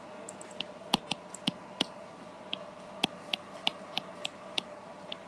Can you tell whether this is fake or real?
real